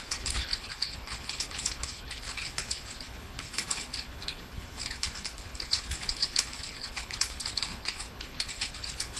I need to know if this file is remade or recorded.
remade